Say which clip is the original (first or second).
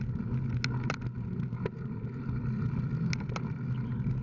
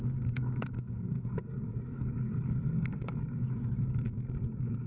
first